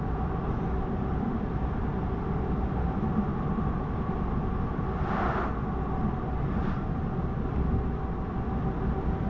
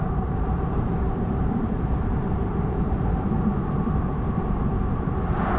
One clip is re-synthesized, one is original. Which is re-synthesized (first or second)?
second